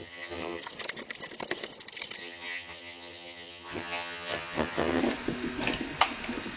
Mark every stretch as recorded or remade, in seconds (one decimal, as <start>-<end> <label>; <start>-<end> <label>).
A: 0.0-0.6 remade; 0.6-2.2 recorded; 2.2-5.0 remade; 5.0-6.6 recorded